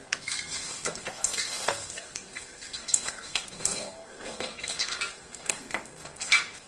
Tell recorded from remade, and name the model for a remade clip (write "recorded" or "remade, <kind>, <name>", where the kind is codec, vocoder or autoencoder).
remade, codec, SNAC